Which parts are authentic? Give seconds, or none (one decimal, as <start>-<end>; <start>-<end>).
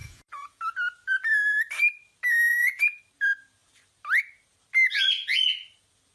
0.6-2.5; 3.0-6.1